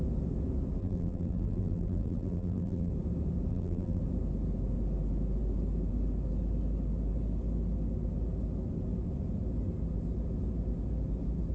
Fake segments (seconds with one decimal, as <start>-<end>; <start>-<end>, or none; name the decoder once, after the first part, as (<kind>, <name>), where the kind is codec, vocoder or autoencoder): 0.8-2.9 (vocoder, BigVGAN v2); 3.5-4.0